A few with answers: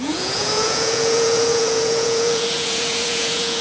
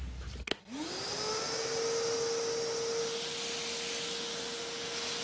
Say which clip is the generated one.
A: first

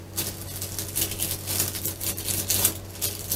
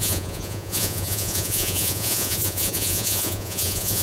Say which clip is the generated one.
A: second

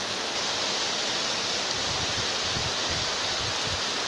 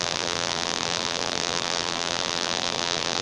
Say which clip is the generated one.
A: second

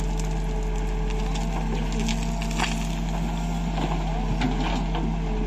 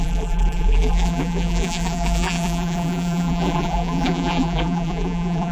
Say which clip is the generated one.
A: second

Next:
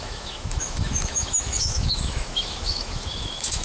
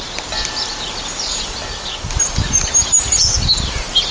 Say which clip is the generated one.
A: first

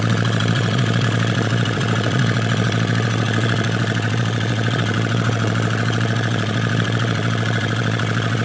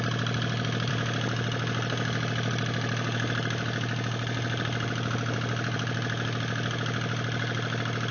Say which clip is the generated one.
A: first